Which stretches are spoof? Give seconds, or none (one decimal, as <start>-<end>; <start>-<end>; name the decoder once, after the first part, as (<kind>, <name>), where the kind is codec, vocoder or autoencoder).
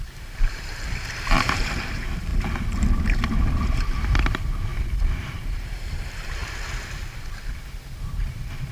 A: 0.0-2.3 (vocoder, BigVGAN v2); 3.3-4.7; 5.2-6.4; 7.5-8.7